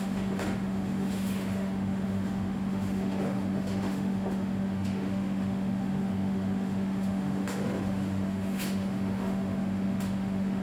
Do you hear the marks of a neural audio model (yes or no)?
yes